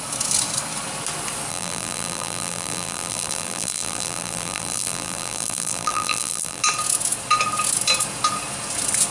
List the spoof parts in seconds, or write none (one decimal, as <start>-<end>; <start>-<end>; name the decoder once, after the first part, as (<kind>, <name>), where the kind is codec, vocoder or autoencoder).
1.5-6.6 (vocoder, BigVGAN v2)